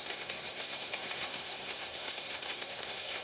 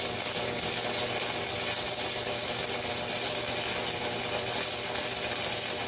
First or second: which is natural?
second